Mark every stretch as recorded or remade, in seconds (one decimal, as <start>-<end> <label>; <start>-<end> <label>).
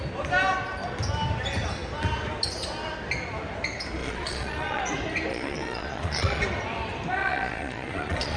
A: 0.0-4.0 recorded; 4.0-4.8 remade; 4.8-5.3 recorded; 5.3-6.4 remade; 6.4-7.2 recorded; 7.2-8.4 remade